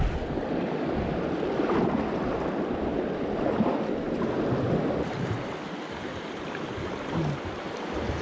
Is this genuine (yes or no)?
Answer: yes